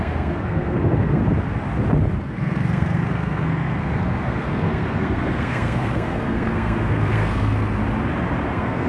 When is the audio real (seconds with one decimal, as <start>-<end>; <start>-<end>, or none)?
1.2-2.2; 7.8-8.5